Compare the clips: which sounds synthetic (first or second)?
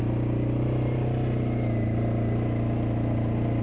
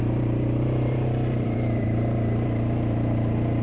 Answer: second